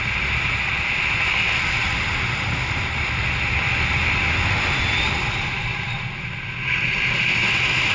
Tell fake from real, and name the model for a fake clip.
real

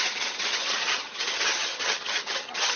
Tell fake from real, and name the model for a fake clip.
fake, vocoder, HiFi-GAN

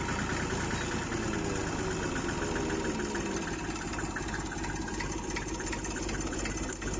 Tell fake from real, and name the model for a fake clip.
real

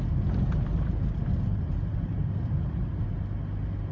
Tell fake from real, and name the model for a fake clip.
real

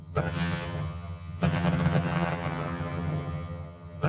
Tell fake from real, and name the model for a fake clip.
fake, vocoder, HiFi-GAN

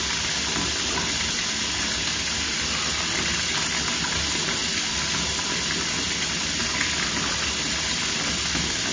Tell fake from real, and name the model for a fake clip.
real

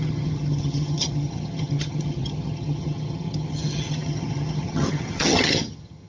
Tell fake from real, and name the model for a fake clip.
fake, vocoder, HiFi-GAN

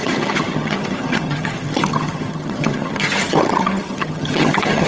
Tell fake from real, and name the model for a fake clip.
fake, vocoder, HiFi-GAN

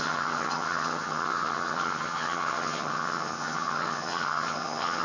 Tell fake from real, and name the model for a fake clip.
fake, vocoder, HiFi-GAN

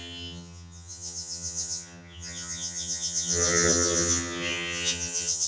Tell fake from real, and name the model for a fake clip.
fake, vocoder, HiFi-GAN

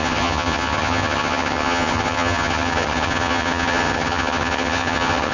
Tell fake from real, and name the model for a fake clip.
fake, vocoder, HiFi-GAN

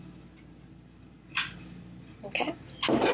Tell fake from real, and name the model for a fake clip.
real